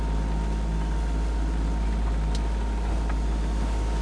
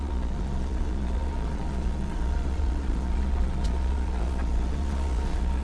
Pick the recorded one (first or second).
first